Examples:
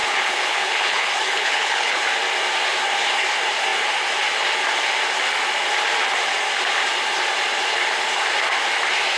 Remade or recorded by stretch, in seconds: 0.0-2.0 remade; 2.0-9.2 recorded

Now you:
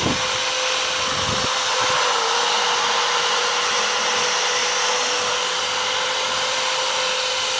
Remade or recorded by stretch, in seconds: 0.0-7.6 recorded

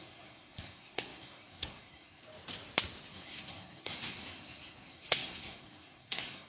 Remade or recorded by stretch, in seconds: 0.0-2.2 remade; 2.2-3.1 recorded; 3.1-6.5 remade